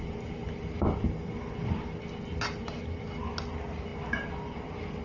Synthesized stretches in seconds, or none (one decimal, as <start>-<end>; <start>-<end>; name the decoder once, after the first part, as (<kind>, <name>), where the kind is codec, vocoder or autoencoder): none